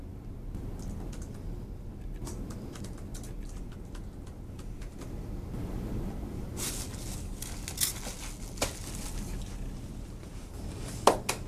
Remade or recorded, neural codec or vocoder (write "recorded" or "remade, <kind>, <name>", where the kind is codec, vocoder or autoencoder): recorded